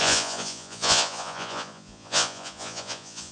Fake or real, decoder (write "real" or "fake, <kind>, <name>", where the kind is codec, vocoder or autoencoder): fake, vocoder, Vocos